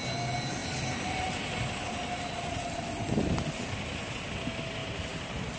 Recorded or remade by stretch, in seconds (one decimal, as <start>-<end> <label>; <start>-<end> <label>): 0.0-4.8 recorded; 4.8-5.6 remade